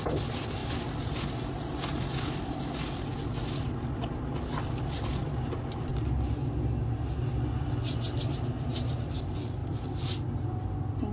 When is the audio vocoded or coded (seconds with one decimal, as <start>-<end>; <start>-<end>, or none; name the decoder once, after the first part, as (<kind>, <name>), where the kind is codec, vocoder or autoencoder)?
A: none